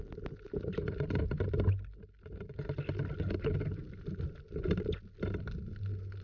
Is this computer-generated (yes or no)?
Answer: no